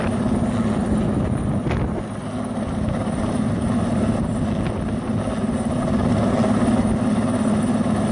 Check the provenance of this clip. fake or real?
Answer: real